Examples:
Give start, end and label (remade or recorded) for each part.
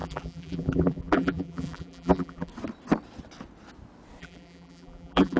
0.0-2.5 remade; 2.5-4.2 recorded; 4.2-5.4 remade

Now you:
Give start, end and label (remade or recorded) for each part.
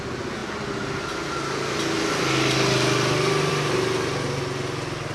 0.0-5.1 recorded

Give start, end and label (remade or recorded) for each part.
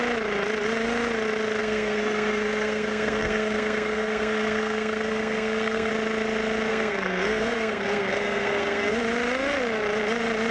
0.0-1.6 recorded; 1.6-5.9 remade; 5.9-6.7 recorded; 6.7-9.0 remade; 9.0-10.5 recorded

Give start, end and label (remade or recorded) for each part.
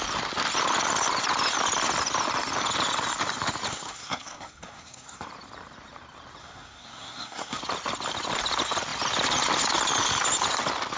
0.0-3.7 recorded; 3.7-5.3 remade; 5.3-6.4 recorded; 6.4-7.6 remade; 7.6-11.0 recorded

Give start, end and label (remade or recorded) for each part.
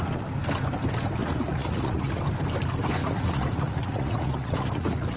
0.0-1.2 recorded; 1.2-2.2 remade; 2.2-3.0 recorded; 3.0-5.2 remade